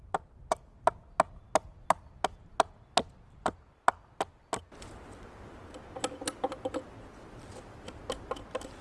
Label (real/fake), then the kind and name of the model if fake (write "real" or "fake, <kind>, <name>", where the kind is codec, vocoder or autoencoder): real